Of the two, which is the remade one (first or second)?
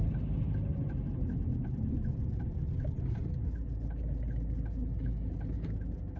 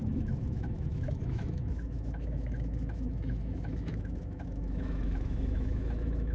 second